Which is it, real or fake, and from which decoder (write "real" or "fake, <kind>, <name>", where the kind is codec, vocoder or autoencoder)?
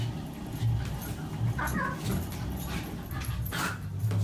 real